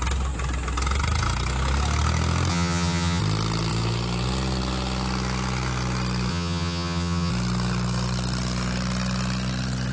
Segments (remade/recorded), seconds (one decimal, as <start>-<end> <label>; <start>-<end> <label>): 0.0-2.5 recorded; 2.5-3.2 remade; 3.2-6.3 recorded; 6.3-7.3 remade; 7.3-9.9 recorded